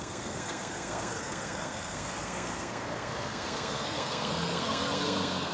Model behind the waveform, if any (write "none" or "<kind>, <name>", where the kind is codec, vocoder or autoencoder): codec, SNAC